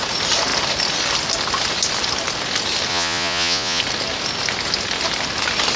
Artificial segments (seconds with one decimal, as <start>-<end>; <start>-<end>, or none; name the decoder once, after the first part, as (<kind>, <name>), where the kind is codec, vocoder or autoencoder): 2.9-3.8 (vocoder, Vocos)